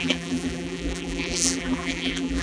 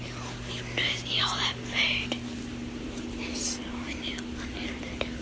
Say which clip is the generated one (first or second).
first